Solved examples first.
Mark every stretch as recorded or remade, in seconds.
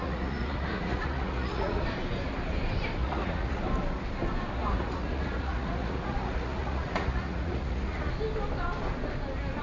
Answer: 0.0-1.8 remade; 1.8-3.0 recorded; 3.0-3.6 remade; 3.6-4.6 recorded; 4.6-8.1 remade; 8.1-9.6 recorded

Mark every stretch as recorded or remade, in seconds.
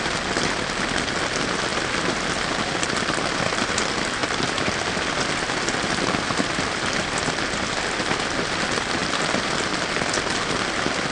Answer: 0.0-11.1 recorded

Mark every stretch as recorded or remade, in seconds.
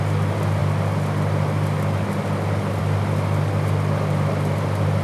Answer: 0.0-5.0 recorded